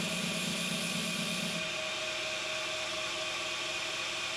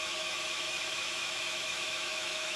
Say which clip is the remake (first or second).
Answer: second